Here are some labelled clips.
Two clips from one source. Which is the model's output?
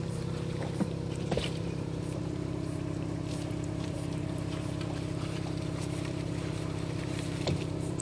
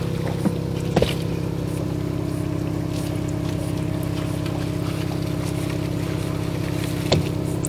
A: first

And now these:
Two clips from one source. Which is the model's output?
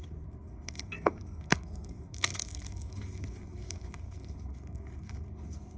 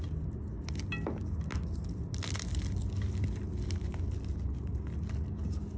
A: first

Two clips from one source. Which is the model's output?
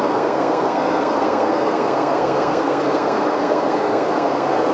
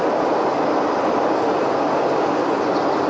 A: first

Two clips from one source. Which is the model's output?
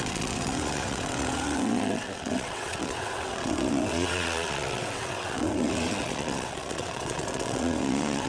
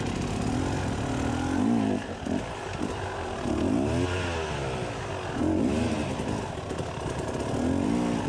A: first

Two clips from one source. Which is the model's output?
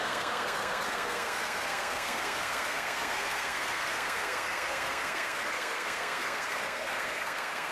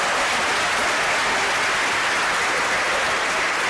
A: first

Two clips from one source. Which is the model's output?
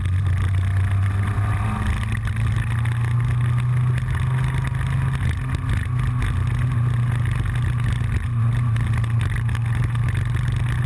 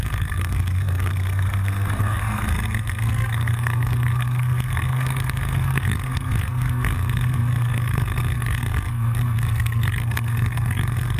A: second